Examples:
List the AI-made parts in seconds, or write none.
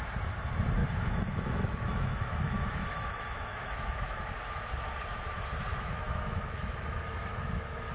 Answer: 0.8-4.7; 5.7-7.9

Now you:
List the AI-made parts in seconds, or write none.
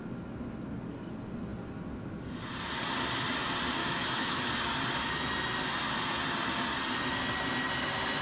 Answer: 3.8-4.5